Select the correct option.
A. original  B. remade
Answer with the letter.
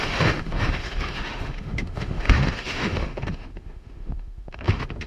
B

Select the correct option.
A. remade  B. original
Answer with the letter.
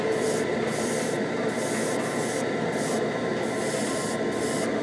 B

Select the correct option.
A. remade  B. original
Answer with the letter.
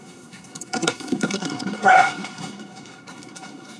A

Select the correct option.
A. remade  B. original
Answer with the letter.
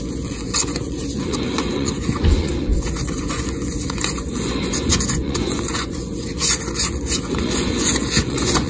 A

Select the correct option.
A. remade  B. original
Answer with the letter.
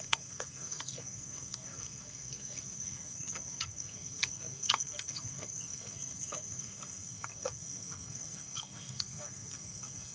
A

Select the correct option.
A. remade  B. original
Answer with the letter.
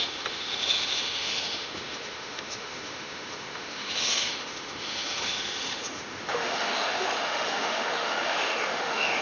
A